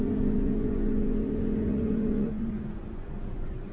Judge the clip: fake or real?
fake